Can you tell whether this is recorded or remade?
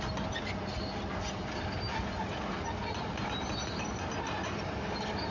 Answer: recorded